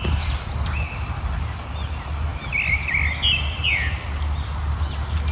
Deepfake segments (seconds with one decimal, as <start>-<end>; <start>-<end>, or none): none